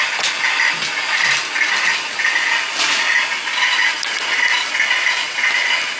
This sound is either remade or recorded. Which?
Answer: recorded